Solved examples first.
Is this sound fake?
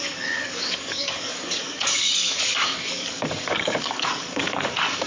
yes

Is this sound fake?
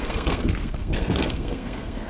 yes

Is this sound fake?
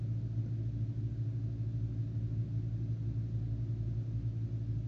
no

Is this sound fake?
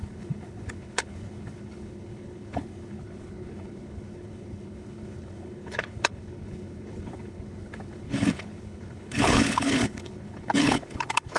yes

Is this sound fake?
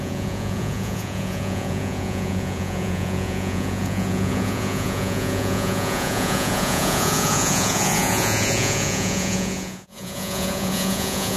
yes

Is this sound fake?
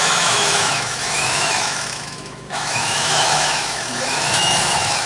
yes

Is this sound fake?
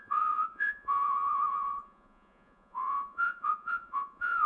yes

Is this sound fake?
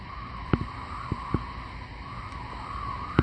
no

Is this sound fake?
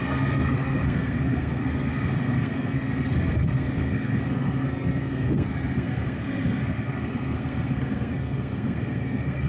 yes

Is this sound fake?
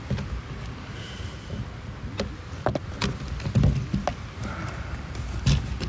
no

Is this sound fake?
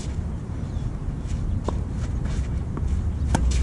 no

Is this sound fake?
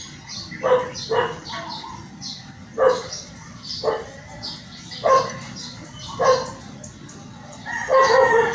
no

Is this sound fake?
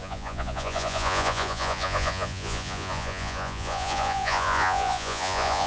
yes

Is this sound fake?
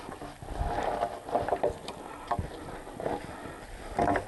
no